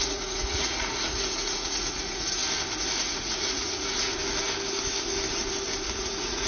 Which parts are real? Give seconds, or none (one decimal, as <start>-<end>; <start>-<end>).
2.4-3.0; 4.1-5.9